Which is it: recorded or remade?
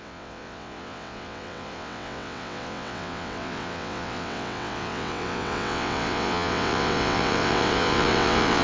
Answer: remade